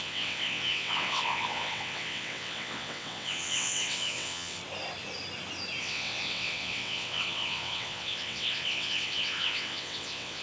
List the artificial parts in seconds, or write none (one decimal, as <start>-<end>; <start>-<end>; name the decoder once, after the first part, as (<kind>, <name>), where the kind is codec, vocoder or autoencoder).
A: 0.0-4.6 (vocoder, WaveNeXt); 5.8-10.4